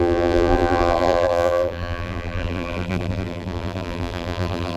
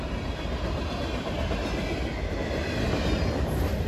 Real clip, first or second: second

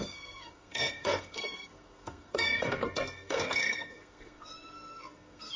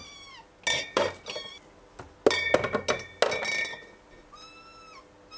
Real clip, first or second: second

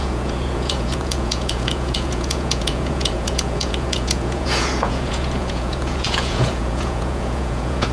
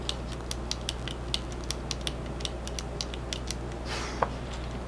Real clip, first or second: second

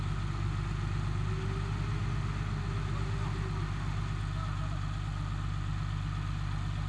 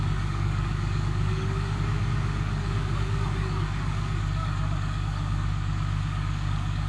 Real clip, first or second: first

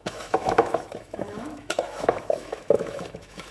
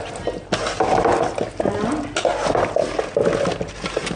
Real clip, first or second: second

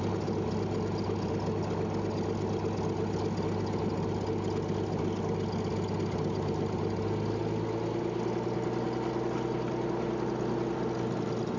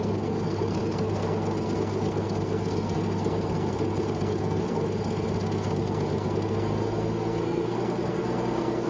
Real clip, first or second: first